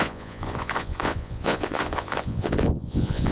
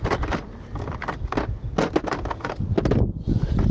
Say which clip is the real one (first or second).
second